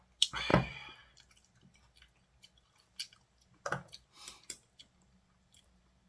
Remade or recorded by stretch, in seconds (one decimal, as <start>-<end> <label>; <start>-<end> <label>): 0.0-6.1 recorded